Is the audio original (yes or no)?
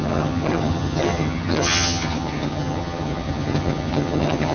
no